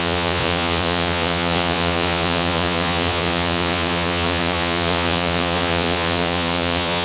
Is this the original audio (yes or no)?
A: no